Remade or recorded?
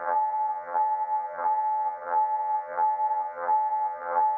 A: remade